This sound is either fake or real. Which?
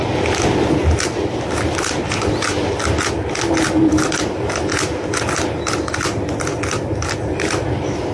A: real